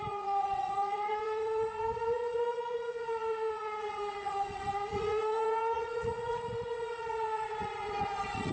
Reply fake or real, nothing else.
fake